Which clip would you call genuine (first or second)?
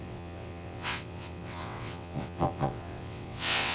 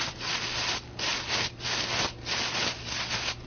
second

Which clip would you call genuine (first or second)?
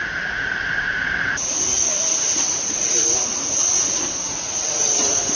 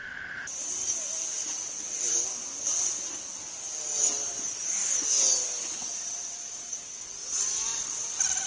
second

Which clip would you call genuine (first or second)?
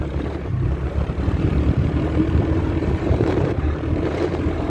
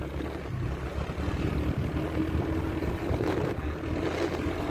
second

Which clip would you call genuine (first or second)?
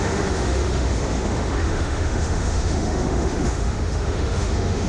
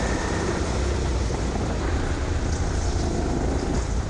second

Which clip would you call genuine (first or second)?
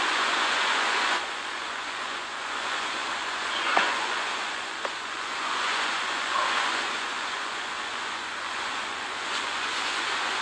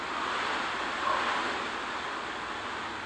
second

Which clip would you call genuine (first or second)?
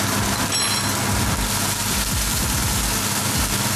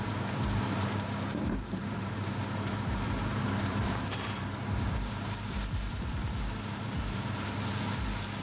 first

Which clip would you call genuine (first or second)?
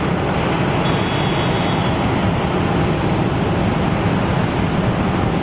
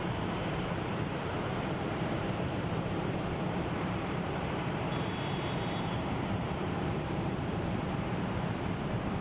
first